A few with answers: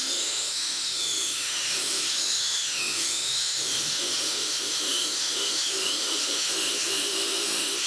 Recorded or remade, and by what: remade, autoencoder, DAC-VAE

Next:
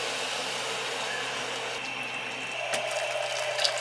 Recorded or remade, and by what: recorded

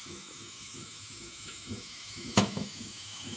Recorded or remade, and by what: remade, autoencoder, DAC-VAE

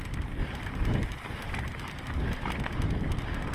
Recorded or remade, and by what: recorded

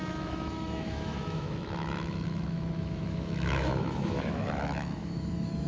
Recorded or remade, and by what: remade, autoencoder, DAC-VAE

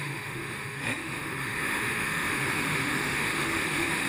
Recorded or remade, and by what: remade, autoencoder, DAC-VAE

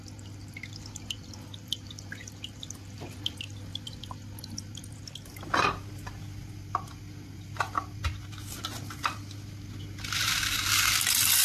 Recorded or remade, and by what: recorded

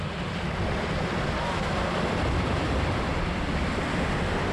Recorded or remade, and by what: recorded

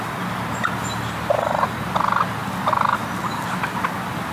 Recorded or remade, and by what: recorded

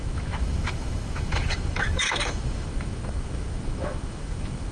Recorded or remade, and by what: remade, autoencoder, DAC-VAE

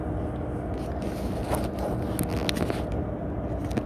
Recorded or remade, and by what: recorded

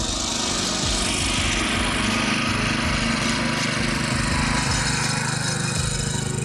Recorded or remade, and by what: recorded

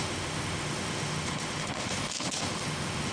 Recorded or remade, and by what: remade, autoencoder, DAC-VAE